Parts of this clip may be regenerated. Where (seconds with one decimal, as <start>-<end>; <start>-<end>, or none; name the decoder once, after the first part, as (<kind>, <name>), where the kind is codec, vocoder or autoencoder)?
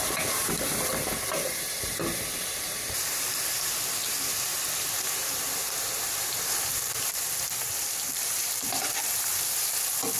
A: 0.0-10.2 (vocoder, BigVGAN v2)